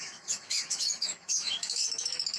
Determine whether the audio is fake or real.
fake